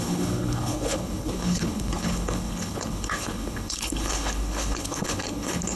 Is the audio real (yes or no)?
no